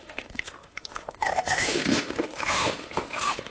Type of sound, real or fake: fake